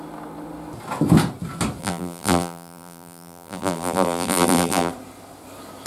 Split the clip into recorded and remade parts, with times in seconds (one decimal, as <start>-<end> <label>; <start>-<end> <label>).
0.0-1.8 recorded; 1.8-4.9 remade; 4.9-5.9 recorded